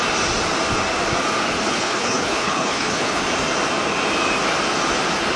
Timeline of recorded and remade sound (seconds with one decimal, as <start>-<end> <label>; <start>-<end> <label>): 0.0-1.7 recorded; 1.7-3.2 remade; 3.2-5.4 recorded